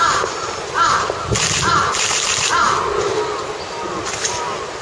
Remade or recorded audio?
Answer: recorded